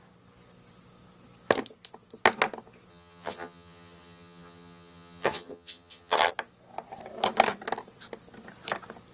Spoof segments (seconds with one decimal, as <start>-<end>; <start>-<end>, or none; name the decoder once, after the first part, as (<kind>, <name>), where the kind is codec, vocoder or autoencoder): 2.9-6.3 (vocoder, HiFi-GAN)